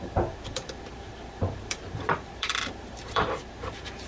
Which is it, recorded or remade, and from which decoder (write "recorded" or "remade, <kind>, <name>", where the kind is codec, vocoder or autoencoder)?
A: remade, vocoder, BigVGAN v2